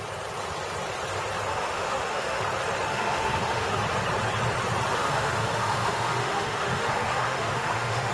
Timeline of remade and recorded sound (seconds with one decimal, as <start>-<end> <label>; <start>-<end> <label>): 0.0-1.5 recorded; 1.5-2.4 remade; 2.4-2.9 recorded; 2.9-3.7 remade; 3.7-4.9 recorded; 4.9-8.1 remade